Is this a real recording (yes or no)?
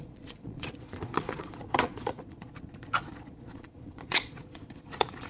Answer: no